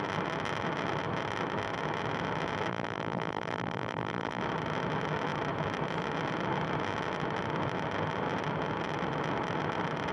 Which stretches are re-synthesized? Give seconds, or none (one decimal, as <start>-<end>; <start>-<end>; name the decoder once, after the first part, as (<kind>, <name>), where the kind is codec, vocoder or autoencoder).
2.7-4.4 (vocoder, BigVGAN v2)